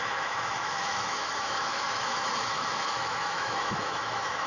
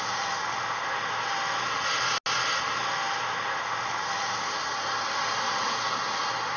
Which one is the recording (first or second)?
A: second